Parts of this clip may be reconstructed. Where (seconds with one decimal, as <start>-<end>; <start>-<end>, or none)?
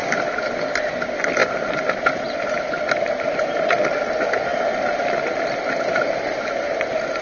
none